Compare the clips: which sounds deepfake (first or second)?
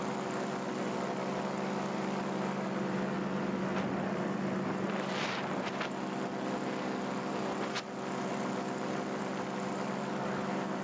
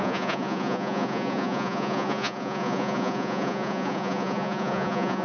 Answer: second